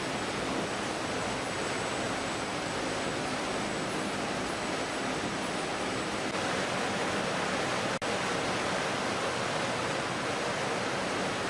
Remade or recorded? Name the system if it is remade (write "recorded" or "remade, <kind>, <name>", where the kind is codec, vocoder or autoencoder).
recorded